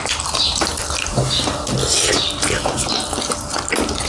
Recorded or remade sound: recorded